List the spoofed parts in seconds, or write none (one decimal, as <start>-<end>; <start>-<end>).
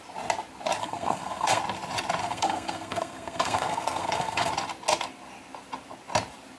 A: 0.8-1.6; 2.2-4.5